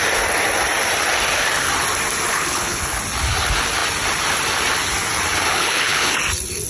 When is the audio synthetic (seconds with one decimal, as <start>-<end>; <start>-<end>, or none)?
2.3-3.0; 5.5-6.2